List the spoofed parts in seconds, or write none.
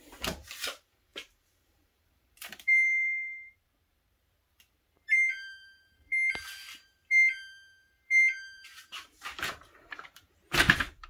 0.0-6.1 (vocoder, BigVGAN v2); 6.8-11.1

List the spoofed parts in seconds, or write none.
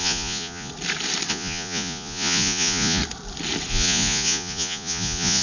0.0-0.7 (vocoder, Vocos); 1.3-3.0; 3.7-5.4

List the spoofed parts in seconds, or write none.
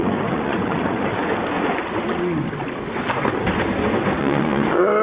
0.0-1.2 (vocoder, Vocos); 4.2-5.0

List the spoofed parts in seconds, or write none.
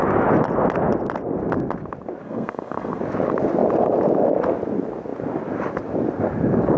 2.2-3.0 (codec, SNAC)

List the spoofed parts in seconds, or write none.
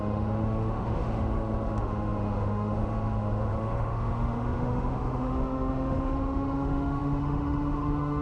0.0-8.2 (autoencoder, DAC-VAE)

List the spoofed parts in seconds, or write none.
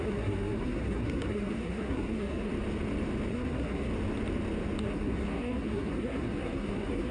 0.0-2.5 (codec, SNAC); 3.3-3.9; 4.8-7.1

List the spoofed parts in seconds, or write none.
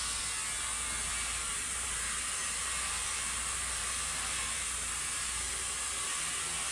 1.5-5.5 (vocoder, BigVGAN v2)